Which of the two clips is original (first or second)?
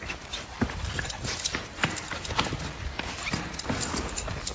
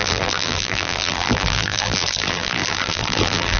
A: first